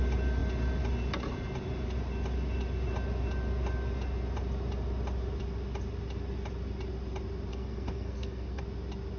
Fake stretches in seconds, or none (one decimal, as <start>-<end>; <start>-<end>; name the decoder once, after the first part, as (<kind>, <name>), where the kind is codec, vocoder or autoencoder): 7.5-8.6 (codec, SNAC)